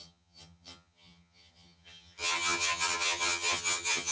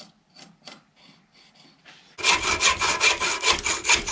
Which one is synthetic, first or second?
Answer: first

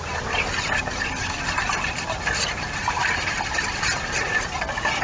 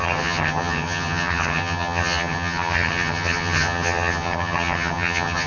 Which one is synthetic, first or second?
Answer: second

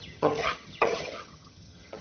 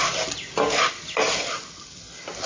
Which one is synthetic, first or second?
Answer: first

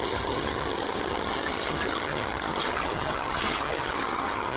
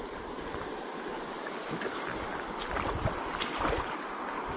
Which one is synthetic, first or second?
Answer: first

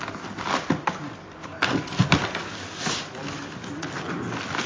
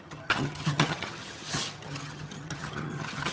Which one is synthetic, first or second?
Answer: second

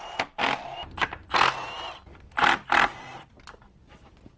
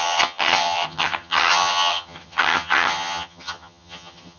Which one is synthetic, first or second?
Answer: second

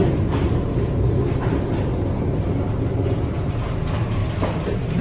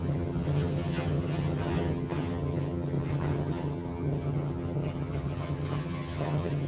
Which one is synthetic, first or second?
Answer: second